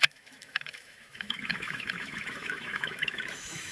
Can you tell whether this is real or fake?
fake